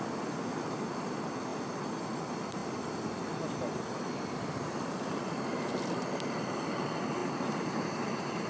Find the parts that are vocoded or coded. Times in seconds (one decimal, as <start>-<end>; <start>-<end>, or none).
none

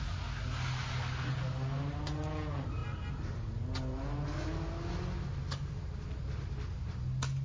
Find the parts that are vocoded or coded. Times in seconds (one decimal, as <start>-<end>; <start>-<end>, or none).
none

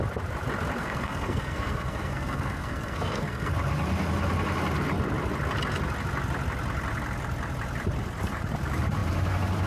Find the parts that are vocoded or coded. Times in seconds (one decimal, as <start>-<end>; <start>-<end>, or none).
0.8-3.5

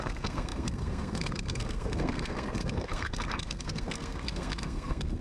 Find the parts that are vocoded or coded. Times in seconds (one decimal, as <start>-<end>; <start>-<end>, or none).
0.0-5.2

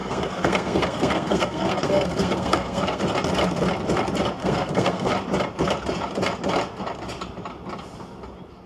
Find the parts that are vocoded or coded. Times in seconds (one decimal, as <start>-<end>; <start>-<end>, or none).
0.0-3.0; 4.4-5.1

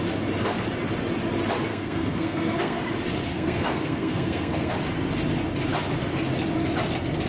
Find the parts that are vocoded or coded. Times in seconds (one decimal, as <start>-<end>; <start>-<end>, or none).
1.7-2.9; 3.3-4.7

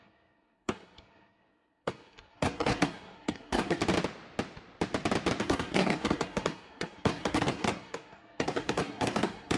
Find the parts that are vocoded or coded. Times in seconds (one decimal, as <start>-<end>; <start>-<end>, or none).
0.0-3.8; 5.4-9.6

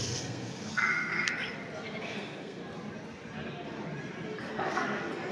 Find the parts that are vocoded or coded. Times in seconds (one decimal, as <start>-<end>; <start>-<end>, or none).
0.0-1.3; 2.0-2.6; 4.4-5.3